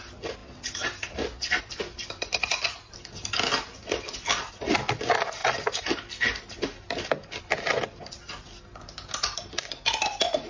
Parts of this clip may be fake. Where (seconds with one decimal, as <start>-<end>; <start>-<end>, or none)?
none

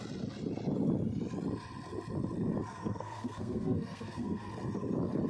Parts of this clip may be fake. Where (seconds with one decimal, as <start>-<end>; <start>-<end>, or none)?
2.7-4.5

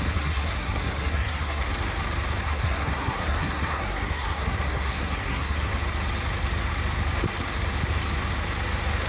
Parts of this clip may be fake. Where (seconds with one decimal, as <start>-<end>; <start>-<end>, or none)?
0.0-1.7; 2.4-5.7

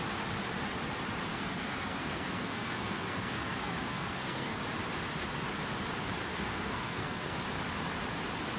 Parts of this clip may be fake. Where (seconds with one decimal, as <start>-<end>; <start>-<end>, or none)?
1.3-4.6; 6.3-7.4

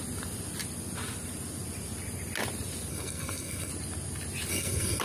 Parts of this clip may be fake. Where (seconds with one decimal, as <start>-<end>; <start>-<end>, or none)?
2.9-3.7; 4.5-5.0

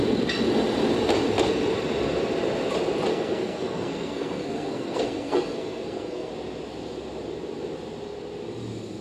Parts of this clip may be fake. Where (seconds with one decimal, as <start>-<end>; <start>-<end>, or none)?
3.1-6.3

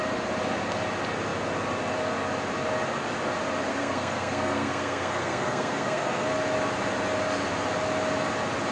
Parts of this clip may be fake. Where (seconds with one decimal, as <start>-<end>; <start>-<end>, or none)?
3.7-6.3

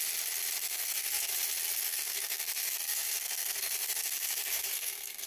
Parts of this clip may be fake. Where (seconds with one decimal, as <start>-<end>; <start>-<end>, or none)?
0.6-1.3; 1.9-5.3